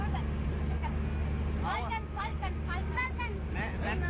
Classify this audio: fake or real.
real